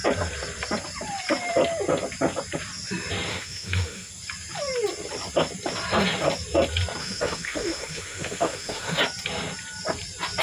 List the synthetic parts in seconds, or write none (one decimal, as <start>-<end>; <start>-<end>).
3.3-4.1; 7.0-9.0